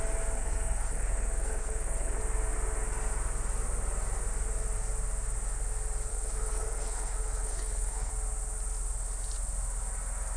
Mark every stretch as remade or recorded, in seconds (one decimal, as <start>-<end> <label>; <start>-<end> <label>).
0.0-0.4 recorded; 0.4-2.2 remade; 2.2-6.1 recorded; 6.1-8.1 remade; 8.1-10.4 recorded